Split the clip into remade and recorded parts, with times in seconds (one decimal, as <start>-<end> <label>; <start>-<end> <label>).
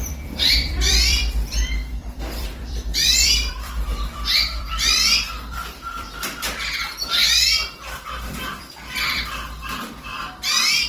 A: 0.0-10.9 remade